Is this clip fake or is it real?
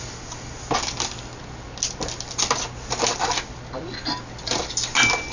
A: real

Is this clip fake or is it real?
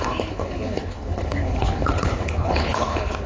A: fake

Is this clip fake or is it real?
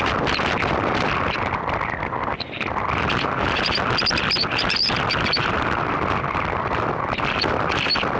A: real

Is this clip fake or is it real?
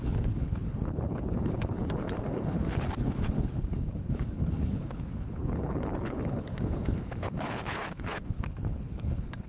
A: fake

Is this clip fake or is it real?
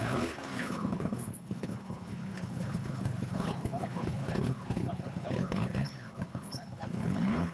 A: fake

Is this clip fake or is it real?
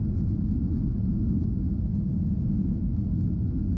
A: real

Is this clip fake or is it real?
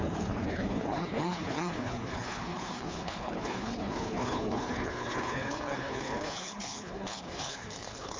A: fake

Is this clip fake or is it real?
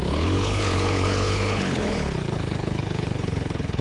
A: fake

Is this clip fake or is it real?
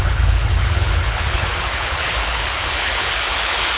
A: fake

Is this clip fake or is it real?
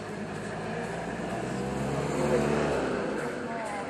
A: real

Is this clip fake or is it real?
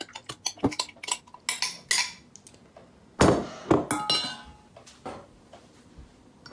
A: real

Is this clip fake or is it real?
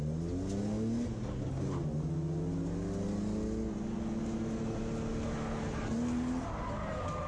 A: real